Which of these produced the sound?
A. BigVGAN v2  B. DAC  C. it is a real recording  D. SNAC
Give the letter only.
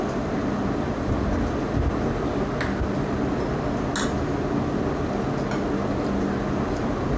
C